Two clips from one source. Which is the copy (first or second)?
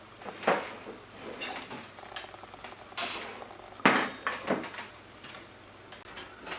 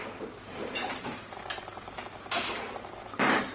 second